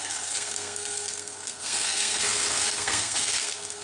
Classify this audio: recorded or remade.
remade